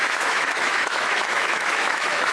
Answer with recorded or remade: remade